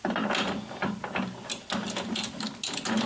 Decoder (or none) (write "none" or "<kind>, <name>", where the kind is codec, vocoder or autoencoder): none